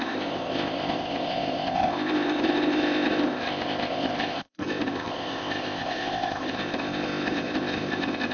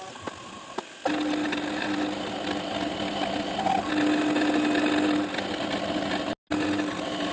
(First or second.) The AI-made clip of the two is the first